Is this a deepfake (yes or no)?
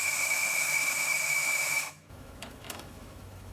yes